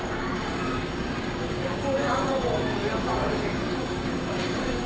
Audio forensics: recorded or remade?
remade